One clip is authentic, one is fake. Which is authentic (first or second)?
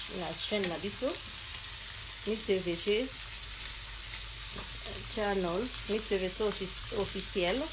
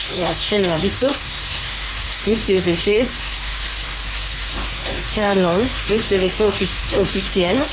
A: first